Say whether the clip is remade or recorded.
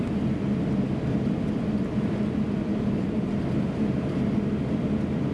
remade